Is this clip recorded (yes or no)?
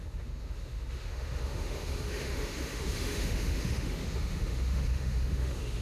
no